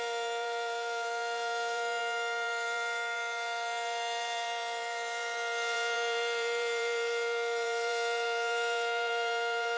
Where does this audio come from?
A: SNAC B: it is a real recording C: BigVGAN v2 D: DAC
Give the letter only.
C